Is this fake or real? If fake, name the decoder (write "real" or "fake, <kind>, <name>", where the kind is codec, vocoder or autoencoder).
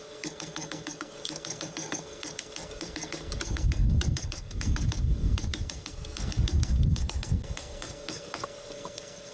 fake, codec, SNAC